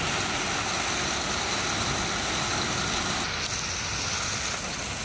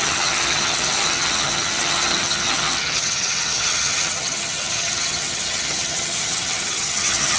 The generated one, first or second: second